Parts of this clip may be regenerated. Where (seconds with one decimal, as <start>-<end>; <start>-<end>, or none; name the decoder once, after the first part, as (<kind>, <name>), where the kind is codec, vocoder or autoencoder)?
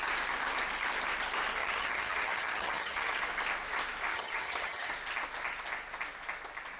1.6-3.2 (vocoder, HiFi-GAN); 4.1-4.9